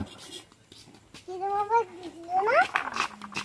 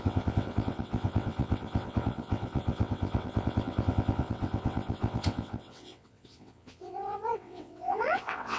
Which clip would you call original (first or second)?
first